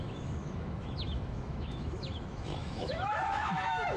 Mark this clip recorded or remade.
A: remade